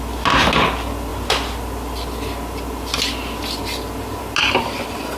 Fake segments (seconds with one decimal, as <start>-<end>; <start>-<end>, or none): none